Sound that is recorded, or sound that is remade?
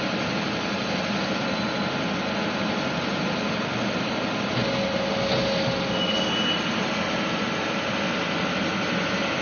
recorded